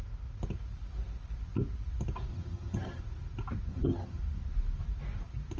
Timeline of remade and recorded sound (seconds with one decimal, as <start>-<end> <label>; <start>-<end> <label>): 0.0-2.3 recorded; 2.3-3.0 remade; 3.0-3.7 recorded; 3.7-4.2 remade; 4.2-5.6 recorded